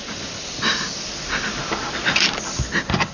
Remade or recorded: recorded